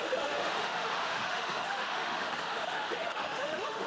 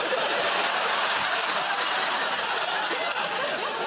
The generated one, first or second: first